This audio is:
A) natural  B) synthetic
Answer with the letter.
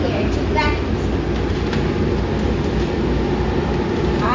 A